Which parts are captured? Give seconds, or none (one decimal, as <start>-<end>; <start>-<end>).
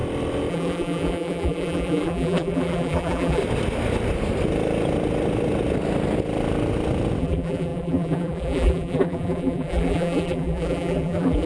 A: 0.0-0.5; 3.4-7.2